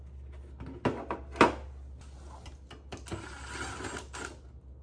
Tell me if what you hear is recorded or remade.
recorded